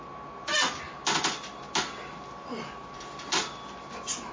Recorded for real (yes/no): yes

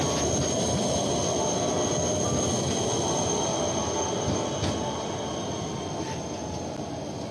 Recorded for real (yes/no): yes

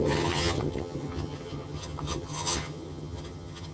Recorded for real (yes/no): no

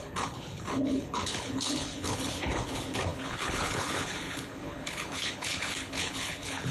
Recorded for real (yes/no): no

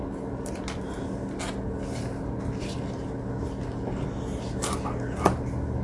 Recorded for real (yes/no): yes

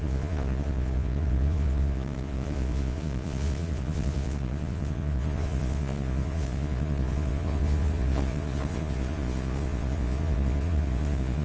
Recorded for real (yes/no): no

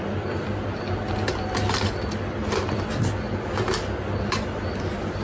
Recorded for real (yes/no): yes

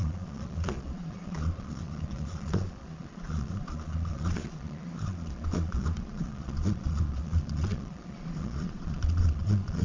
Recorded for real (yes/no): no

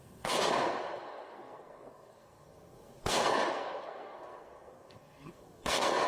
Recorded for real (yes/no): no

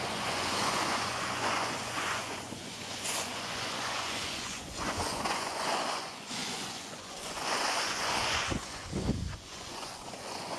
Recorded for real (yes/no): no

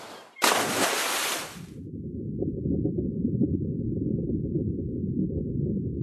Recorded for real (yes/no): yes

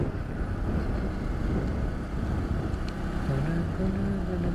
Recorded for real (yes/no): yes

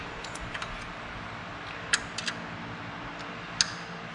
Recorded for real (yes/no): yes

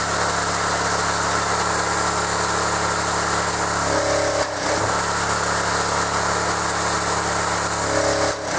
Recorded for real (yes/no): yes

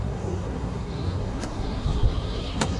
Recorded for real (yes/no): no